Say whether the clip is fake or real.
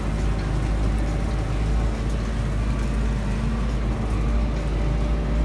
real